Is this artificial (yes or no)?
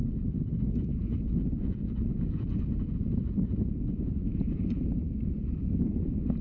yes